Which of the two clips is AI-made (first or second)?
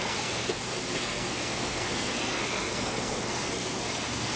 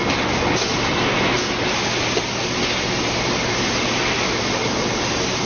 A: first